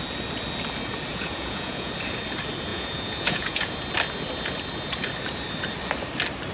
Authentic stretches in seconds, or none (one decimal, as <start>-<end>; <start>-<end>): 0.0-1.1; 1.9-2.7; 3.7-6.5